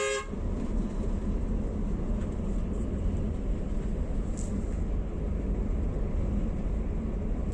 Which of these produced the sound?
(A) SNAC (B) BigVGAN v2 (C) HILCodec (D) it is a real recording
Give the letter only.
D